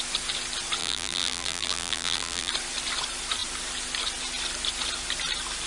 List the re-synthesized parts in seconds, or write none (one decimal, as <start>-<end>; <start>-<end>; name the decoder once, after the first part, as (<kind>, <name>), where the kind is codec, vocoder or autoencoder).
0.8-2.5 (vocoder, BigVGAN v2)